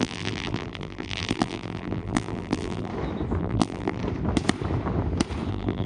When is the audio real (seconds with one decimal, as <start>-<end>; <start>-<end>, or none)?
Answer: 2.9-3.4; 4.0-5.5